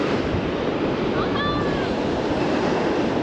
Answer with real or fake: real